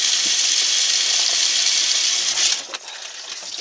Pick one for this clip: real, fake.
real